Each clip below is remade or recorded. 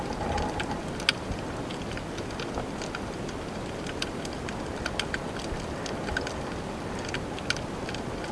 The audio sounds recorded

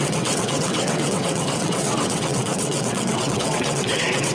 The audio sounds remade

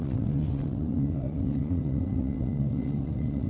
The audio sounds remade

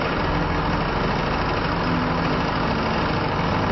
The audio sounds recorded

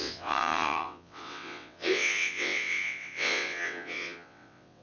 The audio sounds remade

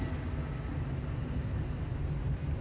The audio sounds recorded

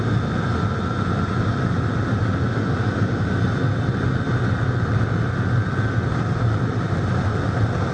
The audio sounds recorded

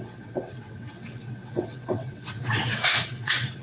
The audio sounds remade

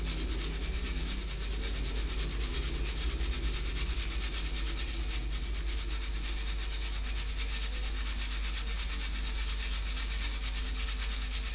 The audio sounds recorded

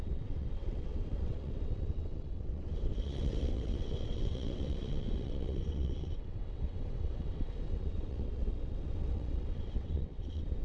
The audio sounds remade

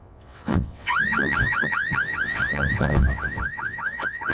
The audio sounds remade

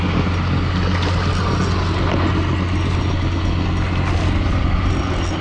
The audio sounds recorded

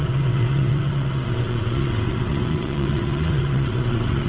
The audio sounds remade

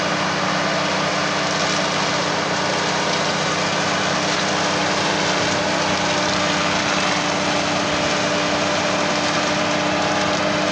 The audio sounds recorded